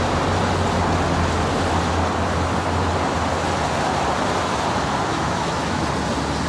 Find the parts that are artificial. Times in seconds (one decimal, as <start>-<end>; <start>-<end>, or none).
5.1-5.8